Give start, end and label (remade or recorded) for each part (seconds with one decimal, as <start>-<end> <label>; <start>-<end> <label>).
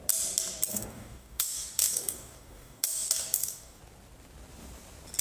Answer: 0.0-0.7 recorded; 0.7-3.8 remade; 3.8-5.2 recorded